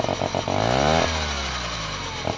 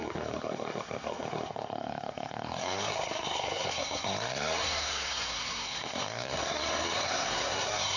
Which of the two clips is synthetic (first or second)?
second